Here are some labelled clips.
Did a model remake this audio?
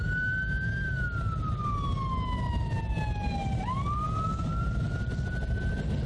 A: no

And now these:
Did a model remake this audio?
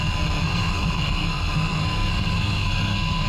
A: yes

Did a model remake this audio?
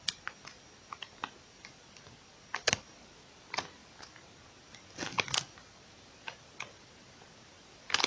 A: no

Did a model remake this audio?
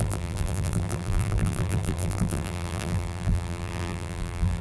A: yes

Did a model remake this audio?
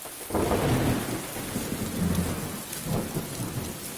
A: no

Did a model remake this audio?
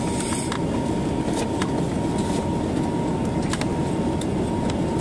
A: no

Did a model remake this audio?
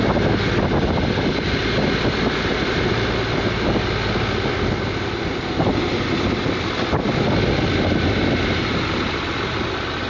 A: no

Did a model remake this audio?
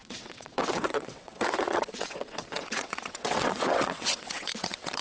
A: yes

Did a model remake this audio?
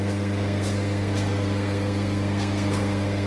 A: yes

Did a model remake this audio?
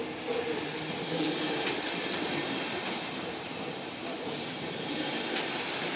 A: yes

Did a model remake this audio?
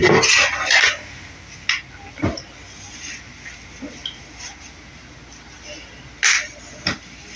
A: no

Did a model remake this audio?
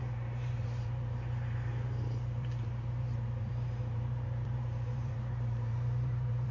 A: yes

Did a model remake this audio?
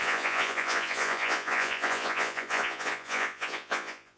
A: yes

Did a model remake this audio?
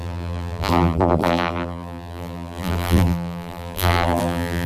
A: yes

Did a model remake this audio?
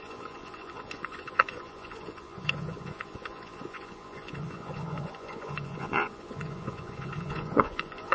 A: yes